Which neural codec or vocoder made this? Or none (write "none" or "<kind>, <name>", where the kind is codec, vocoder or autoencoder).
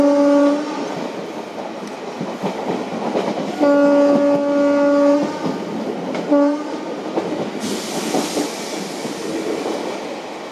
none